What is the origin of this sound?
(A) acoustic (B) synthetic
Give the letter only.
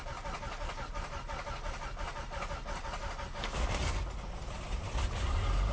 A